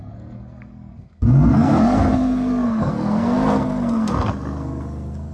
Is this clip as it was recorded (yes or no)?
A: no